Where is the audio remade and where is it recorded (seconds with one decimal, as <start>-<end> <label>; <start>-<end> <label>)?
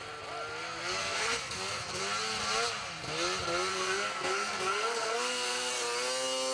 0.0-1.0 recorded; 1.0-2.0 remade; 2.0-3.7 recorded; 3.7-5.7 remade; 5.7-6.5 recorded